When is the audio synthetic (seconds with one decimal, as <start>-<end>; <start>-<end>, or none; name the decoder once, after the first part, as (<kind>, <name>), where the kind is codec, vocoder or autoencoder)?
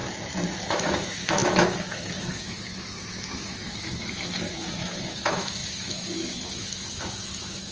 0.7-7.7 (autoencoder, DAC-VAE)